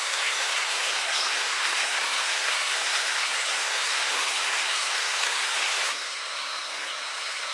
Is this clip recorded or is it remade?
remade